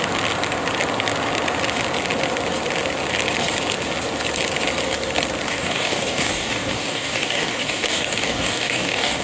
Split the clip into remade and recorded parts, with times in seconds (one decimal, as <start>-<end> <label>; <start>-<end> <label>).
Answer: 0.0-5.5 recorded; 5.5-9.2 remade